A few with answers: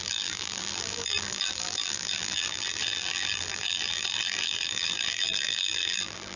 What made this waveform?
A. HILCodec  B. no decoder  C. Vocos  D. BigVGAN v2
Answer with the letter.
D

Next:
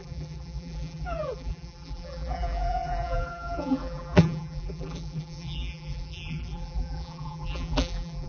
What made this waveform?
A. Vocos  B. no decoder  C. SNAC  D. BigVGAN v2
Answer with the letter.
D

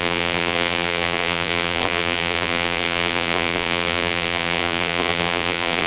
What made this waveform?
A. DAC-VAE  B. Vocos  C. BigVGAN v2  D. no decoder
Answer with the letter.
C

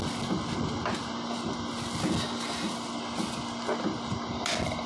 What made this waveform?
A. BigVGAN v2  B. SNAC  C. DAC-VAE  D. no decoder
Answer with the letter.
D